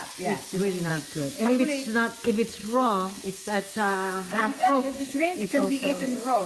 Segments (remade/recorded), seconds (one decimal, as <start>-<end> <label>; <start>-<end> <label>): 0.0-0.9 recorded; 0.9-1.6 remade; 1.6-2.6 recorded; 2.6-6.5 remade